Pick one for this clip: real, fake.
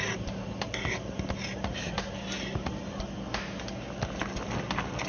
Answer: real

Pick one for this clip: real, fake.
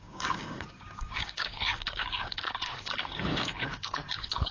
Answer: fake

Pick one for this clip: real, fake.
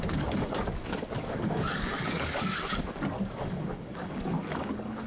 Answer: fake